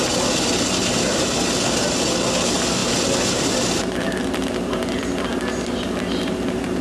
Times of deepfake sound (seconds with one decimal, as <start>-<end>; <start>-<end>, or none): 0.8-1.4; 2.8-3.6